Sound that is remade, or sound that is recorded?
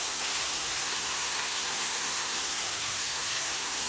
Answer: remade